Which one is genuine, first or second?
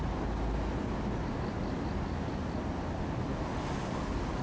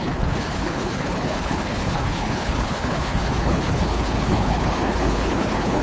first